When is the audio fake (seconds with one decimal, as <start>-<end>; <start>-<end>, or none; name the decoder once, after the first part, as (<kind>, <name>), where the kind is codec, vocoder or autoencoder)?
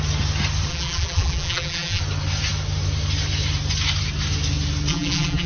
0.7-2.0 (vocoder, BigVGAN v2); 4.9-5.5